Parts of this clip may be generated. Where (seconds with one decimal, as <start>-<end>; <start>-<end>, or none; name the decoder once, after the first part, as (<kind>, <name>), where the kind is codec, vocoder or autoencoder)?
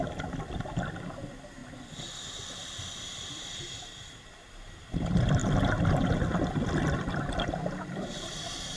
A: 0.0-1.6 (vocoder, BigVGAN v2); 2.5-5.4; 6.7-8.8